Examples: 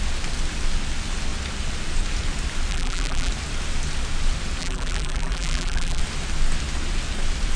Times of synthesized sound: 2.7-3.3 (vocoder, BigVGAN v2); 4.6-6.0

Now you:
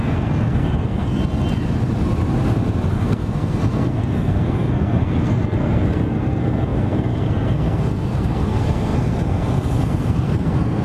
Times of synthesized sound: 0.0-1.2 (codec, SNAC); 2.9-10.8

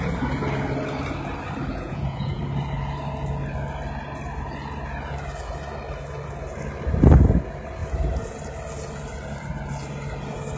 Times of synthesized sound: 1.7-2.4 (vocoder, Vocos)

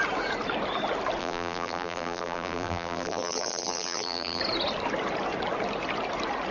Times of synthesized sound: 1.2-4.4 (vocoder, BigVGAN v2)

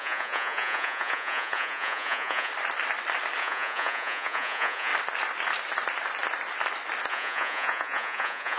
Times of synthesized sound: 0.0-2.5 (vocoder, Vocos); 3.4-4.9; 7.1-8.6

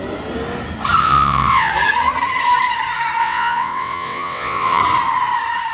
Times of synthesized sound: 1.0-1.7 (vocoder, WaveNeXt); 3.2-4.8